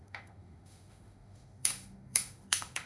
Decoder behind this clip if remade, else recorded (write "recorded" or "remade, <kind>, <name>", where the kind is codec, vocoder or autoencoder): remade, autoencoder, DAC-VAE